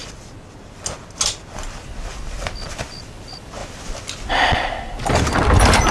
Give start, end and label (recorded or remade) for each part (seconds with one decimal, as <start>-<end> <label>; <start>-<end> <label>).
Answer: 0.0-2.9 recorded; 2.9-3.6 remade; 3.6-4.3 recorded; 4.3-5.9 remade